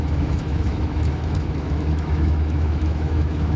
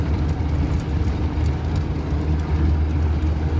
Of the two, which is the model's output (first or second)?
first